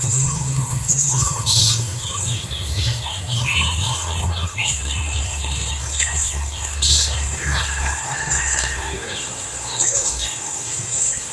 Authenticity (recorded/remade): remade